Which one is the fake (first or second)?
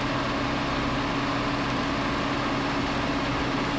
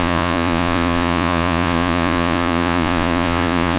second